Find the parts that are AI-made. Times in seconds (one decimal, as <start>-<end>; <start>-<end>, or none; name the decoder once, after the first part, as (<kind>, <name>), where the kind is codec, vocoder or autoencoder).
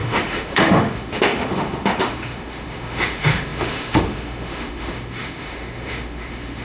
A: 0.0-6.6 (autoencoder, DAC-VAE)